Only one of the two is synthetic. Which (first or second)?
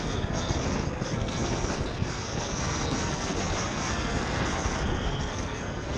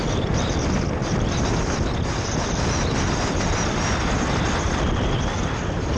first